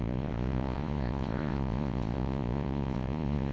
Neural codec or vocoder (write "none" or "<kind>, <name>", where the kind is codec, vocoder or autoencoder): vocoder, Vocos